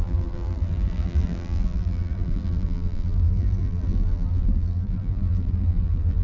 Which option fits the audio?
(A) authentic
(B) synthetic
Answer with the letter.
B